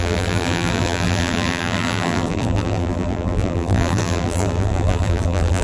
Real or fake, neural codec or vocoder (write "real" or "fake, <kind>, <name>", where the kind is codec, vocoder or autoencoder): fake, vocoder, BigVGAN v2